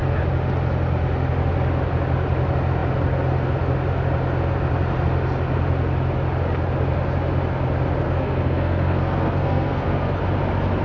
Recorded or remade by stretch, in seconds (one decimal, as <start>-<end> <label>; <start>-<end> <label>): 0.0-8.0 recorded; 8.0-10.2 remade; 10.2-10.8 recorded